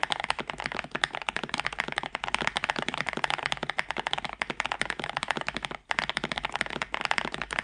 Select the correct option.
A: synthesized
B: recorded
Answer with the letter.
B